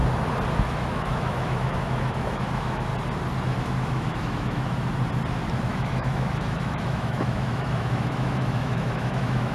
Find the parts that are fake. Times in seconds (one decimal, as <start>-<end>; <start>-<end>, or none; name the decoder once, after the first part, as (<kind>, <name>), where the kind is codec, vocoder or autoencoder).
0.6-2.9 (autoencoder, DAC-VAE); 3.6-4.9; 5.7-9.5

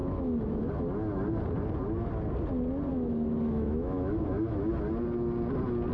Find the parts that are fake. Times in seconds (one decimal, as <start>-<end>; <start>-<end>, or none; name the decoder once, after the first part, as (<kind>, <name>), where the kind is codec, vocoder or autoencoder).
0.0-0.7 (autoencoder, DAC-VAE); 2.9-4.7

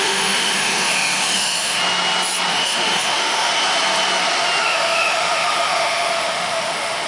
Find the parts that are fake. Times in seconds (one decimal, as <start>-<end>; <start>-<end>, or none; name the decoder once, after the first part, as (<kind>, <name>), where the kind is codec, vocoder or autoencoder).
0.0-1.8 (autoencoder, DAC-VAE); 2.5-3.5; 4.6-7.1